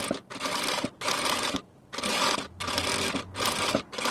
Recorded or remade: recorded